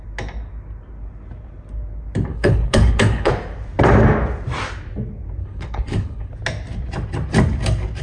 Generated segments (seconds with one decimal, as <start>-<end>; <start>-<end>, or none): 2.3-3.3; 5.4-6.3